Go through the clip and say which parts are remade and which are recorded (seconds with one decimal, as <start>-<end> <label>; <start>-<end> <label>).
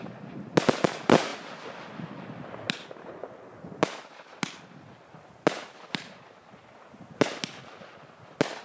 0.0-8.6 recorded